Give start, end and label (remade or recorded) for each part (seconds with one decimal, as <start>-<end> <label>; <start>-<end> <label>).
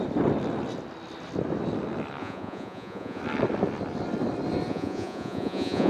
0.0-2.2 recorded; 2.2-3.2 remade; 3.2-4.7 recorded; 4.7-5.9 remade